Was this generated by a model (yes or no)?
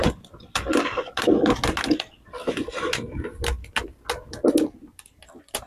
no